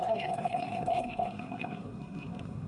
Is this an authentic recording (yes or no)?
no